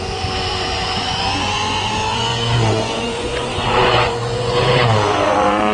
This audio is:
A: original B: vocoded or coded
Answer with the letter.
B